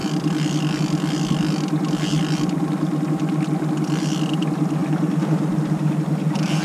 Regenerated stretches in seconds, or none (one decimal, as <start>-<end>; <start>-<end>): none